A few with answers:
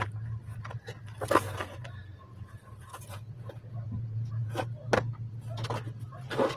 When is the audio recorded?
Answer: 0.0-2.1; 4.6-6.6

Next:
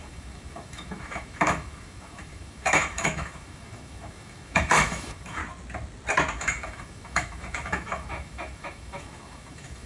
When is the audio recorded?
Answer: 5.4-6.4

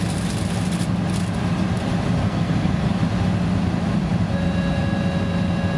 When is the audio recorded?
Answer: 0.0-2.2; 2.9-5.8